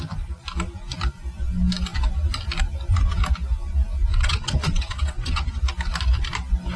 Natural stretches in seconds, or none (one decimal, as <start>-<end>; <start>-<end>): 0.0-4.1; 5.6-6.8